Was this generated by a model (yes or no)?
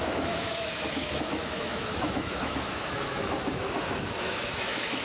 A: yes